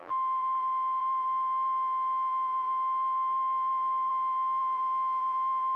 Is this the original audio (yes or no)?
no